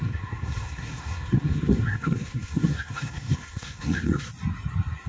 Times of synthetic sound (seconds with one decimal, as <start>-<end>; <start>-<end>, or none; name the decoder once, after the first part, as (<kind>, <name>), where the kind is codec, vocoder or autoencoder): 0.0-4.3 (codec, SNAC)